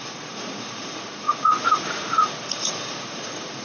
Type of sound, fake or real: fake